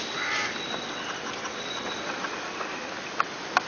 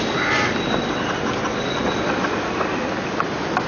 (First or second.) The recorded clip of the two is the second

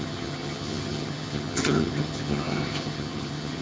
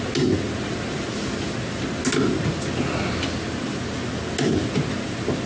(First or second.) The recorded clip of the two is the second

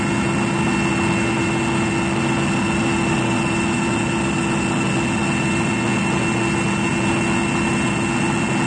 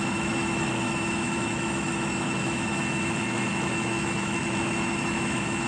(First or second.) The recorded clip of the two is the first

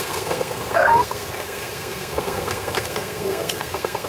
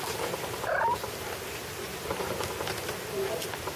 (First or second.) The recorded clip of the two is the second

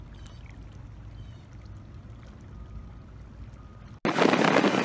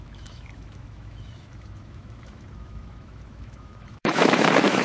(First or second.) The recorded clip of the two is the first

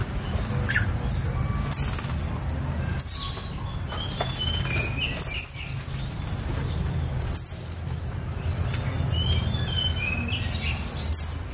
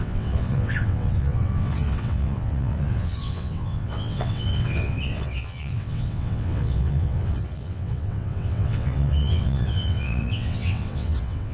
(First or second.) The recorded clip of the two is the first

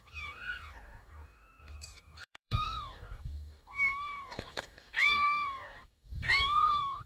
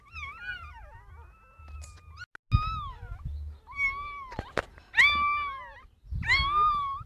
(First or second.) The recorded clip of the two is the second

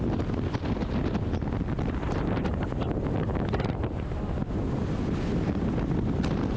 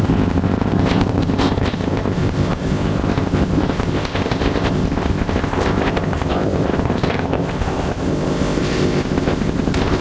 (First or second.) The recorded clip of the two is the first